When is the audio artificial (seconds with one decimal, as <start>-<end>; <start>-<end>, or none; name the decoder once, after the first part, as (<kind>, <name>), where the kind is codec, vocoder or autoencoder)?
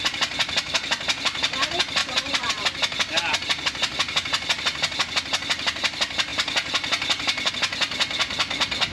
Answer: 2.0-2.5 (vocoder, BigVGAN v2); 6.3-7.5